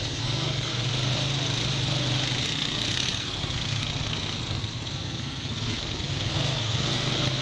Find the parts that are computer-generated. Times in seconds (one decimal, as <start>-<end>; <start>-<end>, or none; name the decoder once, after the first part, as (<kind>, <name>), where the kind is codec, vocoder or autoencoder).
0.0-0.7 (codec, SNAC); 2.4-7.4